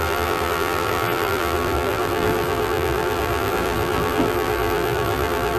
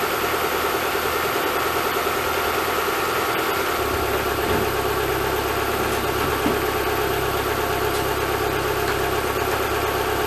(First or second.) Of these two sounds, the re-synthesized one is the first